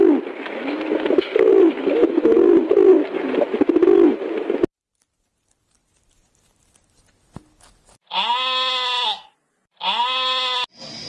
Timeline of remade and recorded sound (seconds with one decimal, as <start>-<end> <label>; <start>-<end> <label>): 0.0-11.1 recorded